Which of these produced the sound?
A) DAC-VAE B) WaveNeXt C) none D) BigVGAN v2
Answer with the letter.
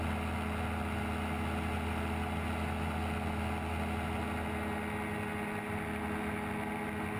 C